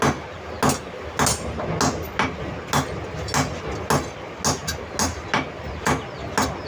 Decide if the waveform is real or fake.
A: real